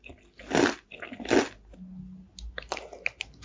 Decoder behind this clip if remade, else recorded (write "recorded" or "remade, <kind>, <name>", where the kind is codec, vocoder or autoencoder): recorded